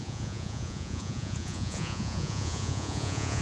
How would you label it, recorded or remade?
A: remade